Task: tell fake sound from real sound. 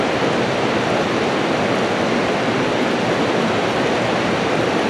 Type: real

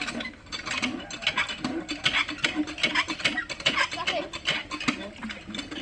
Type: real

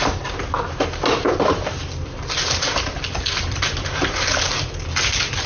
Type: real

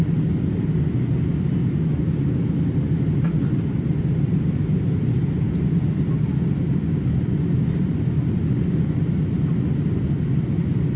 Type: real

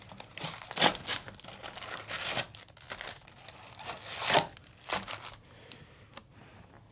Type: real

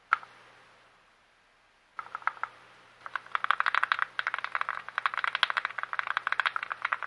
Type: real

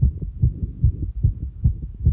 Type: real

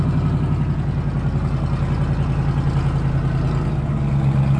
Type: real